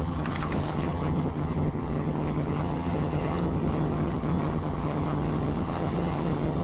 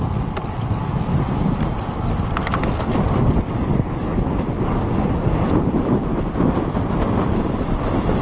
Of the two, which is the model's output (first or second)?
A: first